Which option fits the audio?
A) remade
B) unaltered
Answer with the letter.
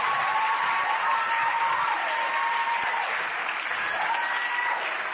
B